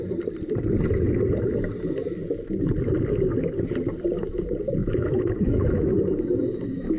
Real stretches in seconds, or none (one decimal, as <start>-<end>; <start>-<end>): 0.0-4.8